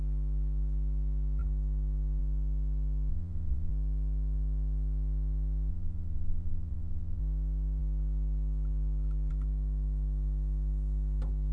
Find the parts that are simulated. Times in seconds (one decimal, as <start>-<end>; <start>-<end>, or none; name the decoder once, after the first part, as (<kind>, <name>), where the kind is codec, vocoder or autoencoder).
3.1-3.7 (vocoder, Vocos); 5.7-7.2